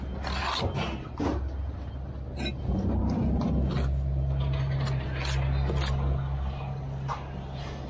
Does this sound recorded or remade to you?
recorded